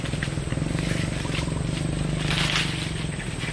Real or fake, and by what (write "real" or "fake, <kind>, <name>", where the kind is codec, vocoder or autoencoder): real